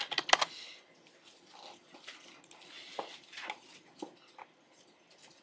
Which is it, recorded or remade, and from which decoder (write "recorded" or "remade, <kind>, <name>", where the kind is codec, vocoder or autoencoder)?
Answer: recorded